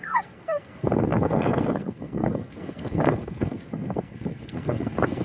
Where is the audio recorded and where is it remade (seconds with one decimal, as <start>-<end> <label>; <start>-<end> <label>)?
0.0-5.2 remade